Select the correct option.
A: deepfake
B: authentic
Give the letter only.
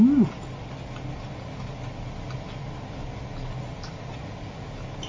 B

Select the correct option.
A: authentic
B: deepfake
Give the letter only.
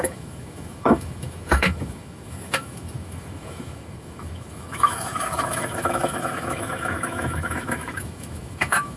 B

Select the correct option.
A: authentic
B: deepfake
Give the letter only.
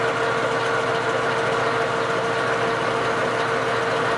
A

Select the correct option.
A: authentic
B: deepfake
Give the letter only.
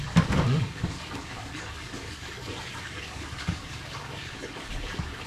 B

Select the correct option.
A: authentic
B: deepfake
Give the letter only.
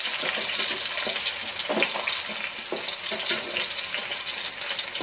A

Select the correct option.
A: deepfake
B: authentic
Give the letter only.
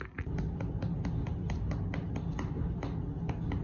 B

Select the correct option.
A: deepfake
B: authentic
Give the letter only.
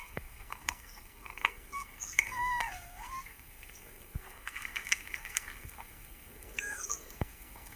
A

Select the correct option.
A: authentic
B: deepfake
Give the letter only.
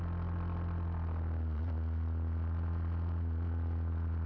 A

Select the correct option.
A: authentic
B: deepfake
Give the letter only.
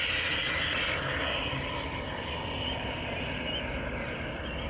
A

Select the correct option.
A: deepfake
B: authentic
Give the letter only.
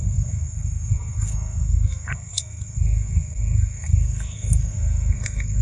A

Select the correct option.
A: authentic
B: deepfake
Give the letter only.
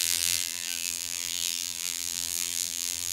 B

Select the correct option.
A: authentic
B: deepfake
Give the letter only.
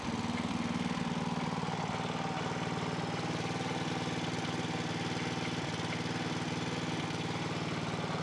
A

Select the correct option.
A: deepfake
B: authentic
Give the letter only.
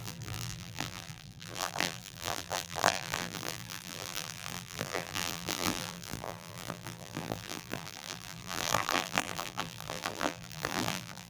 A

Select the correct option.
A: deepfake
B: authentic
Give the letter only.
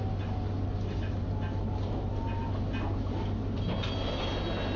B